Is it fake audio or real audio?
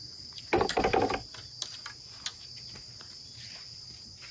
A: real